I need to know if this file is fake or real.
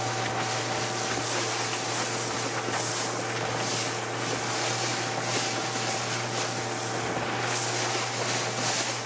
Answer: real